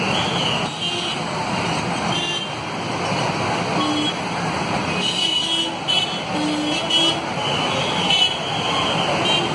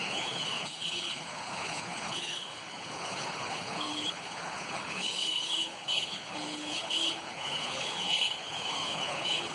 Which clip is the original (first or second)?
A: first